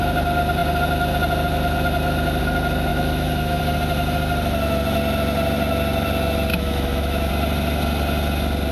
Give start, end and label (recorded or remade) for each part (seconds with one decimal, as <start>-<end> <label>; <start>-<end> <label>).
0.0-2.9 recorded; 2.9-3.6 remade; 3.6-6.5 recorded; 6.5-7.3 remade; 7.3-8.7 recorded